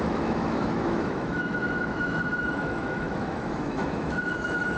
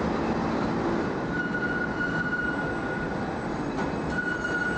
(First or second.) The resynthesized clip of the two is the first